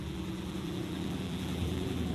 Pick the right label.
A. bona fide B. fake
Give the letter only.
B